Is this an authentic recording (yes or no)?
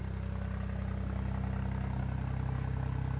yes